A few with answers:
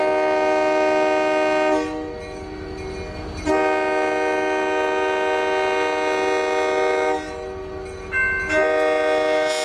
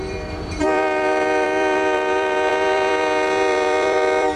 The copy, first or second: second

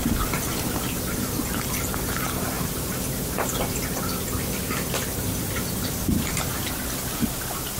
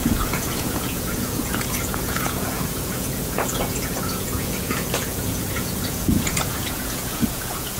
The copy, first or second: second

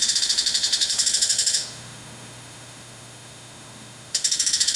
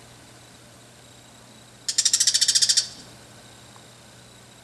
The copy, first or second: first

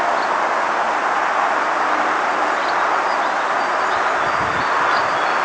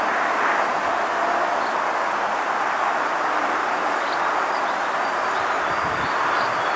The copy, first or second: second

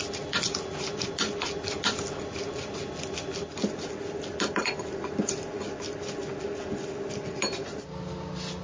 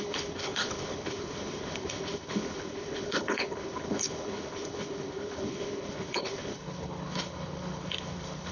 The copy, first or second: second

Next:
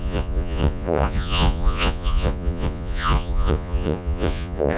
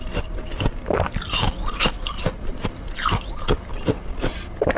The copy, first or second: first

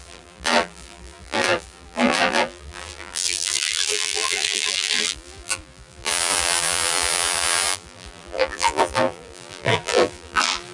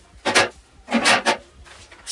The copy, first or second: first